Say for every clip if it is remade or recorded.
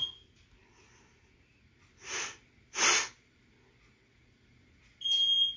recorded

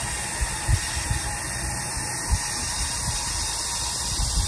recorded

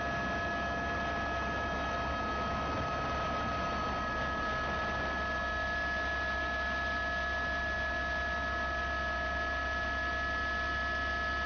recorded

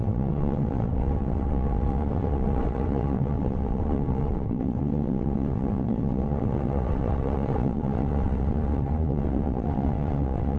remade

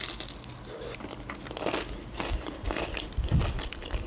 recorded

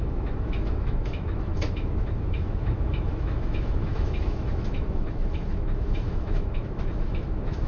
remade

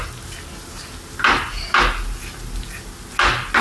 recorded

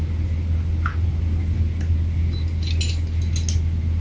recorded